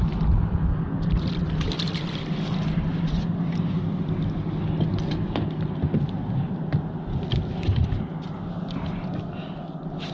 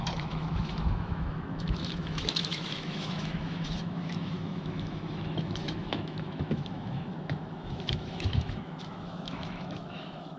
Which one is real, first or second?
first